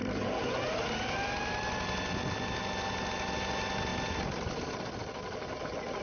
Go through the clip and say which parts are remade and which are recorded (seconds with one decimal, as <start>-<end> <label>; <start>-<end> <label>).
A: 0.0-6.0 recorded